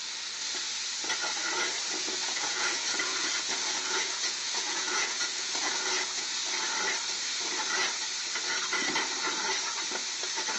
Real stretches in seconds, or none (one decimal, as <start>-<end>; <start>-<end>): 0.0-2.2; 6.3-10.6